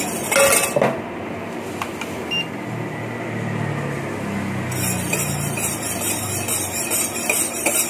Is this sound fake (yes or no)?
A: no